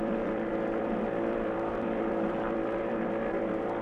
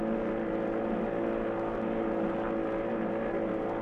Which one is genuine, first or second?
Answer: second